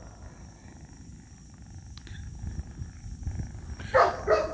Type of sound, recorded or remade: recorded